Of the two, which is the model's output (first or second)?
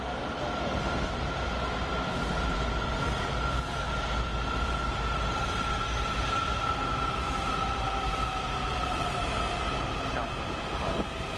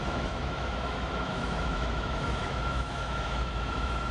second